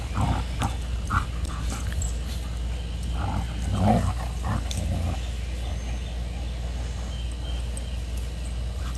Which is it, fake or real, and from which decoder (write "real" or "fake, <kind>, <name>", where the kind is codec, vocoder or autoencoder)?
real